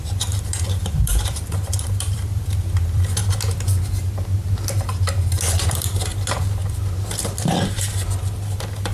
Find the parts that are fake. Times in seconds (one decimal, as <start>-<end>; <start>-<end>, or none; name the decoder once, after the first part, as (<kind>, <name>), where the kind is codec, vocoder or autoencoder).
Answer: 0.0-3.2 (vocoder, BigVGAN v2); 5.7-6.6; 8.2-8.9

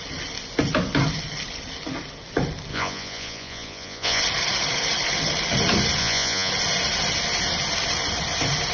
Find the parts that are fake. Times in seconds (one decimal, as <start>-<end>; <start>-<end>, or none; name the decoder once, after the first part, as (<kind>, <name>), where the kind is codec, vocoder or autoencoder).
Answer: 2.7-4.2 (vocoder, Vocos); 6.0-6.5